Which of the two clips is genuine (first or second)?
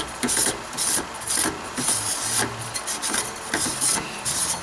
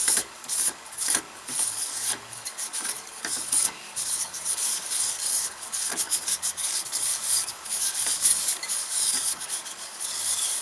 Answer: first